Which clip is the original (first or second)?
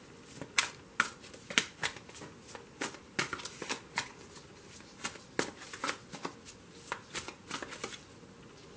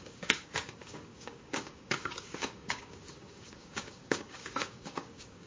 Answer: first